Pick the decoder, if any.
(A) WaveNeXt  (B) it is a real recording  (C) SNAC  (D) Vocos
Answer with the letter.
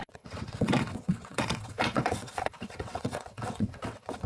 A